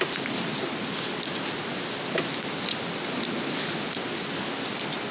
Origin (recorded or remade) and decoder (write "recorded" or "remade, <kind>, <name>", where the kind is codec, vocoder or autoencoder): recorded